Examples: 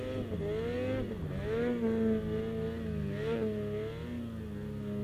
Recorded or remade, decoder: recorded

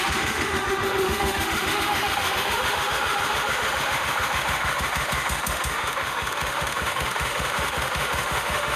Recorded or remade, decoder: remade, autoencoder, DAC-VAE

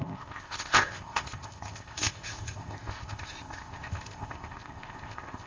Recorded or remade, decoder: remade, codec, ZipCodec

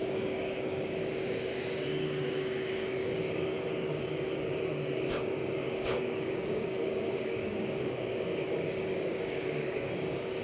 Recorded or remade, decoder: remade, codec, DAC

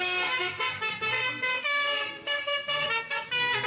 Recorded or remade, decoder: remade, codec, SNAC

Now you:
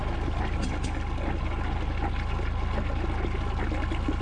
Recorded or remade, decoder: recorded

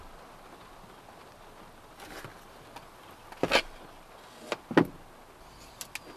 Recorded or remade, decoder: recorded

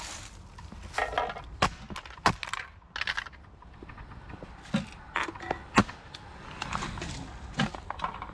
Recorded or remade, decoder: recorded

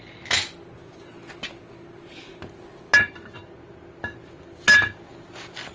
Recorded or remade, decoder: recorded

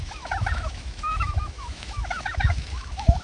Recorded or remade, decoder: remade, autoencoder, DAC-VAE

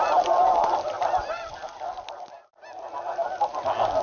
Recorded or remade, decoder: recorded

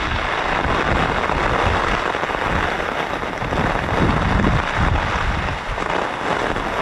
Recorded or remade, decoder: recorded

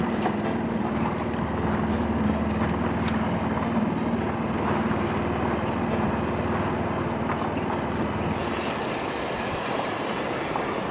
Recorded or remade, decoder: recorded